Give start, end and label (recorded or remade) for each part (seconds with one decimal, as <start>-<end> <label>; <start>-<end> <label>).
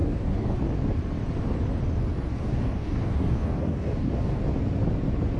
0.0-0.6 remade; 0.6-2.3 recorded; 2.3-4.4 remade; 4.4-5.4 recorded